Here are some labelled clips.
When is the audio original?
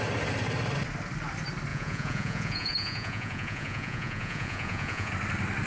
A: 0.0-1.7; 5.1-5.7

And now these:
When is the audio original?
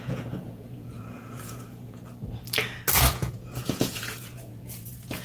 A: 2.0-3.1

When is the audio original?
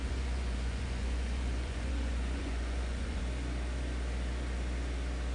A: 3.2-5.3